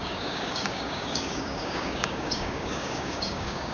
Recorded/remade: remade